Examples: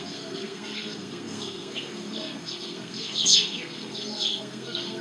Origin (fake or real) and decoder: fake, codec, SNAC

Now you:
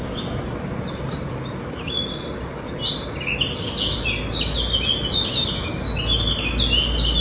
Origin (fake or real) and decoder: real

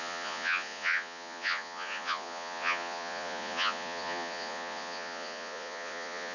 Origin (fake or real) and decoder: fake, vocoder, Vocos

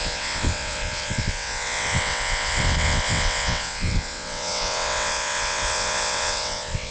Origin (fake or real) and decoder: fake, vocoder, WaveNeXt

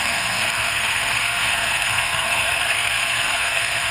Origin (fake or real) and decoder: fake, codec, SNAC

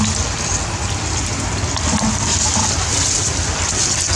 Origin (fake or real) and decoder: real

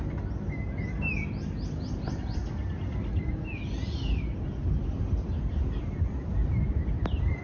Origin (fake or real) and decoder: real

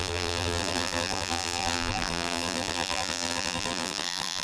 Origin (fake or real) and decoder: fake, vocoder, BigVGAN v2